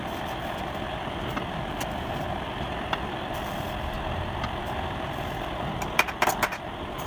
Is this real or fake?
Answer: fake